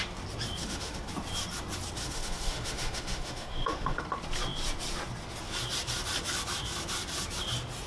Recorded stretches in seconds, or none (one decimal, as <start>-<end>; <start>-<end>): 0.0-0.6; 1.1-2.0; 4.0-7.9